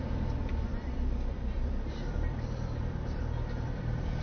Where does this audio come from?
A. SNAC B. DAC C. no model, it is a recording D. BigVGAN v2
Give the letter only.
D